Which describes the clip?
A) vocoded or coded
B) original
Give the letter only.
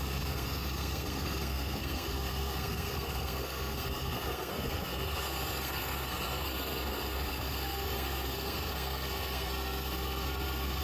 A